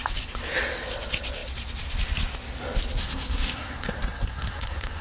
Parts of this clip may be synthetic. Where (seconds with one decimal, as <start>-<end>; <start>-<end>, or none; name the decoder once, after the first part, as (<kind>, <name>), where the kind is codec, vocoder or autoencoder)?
3.0-5.0 (codec, SNAC)